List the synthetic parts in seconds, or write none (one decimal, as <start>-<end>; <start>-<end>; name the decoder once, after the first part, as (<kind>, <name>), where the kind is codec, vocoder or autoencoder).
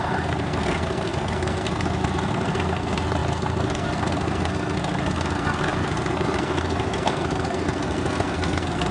0.0-8.9 (codec, SNAC)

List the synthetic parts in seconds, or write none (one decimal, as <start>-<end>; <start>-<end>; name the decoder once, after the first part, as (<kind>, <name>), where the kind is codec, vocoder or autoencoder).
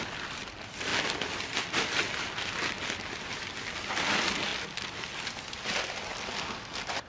none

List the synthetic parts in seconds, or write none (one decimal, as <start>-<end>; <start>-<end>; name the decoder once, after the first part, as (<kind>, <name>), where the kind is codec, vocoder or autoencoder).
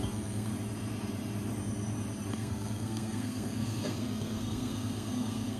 0.0-0.5 (codec, SNAC); 2.3-5.6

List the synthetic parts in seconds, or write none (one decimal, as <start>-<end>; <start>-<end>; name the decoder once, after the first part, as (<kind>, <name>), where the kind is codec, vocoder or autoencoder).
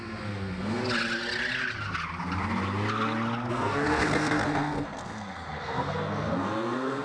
0.0-0.8 (codec, SNAC); 3.5-7.0